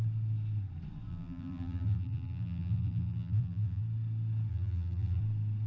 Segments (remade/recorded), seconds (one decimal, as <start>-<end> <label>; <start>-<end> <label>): 0.0-1.1 recorded; 1.1-3.8 remade; 3.8-4.5 recorded; 4.5-5.2 remade; 5.2-5.7 recorded